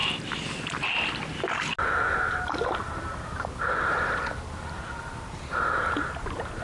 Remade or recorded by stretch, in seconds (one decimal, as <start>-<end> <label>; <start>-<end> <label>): 0.0-6.6 recorded